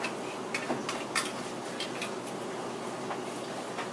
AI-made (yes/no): no